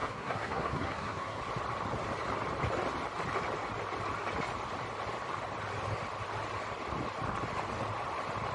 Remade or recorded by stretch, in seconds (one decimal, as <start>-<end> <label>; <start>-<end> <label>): 0.0-1.4 remade; 1.4-8.5 recorded